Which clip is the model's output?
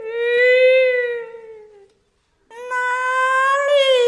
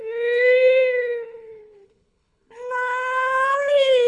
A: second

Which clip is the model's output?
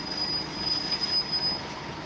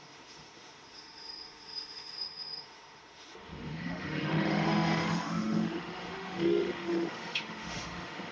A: second